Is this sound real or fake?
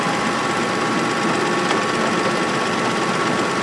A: real